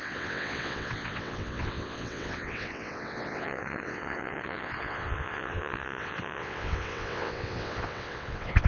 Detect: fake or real fake